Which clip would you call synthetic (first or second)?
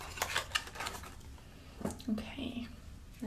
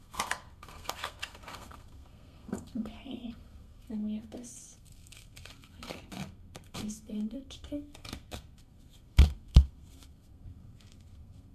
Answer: second